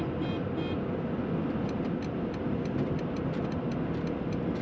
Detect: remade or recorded recorded